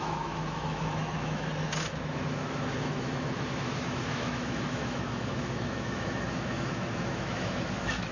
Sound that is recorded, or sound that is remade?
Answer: remade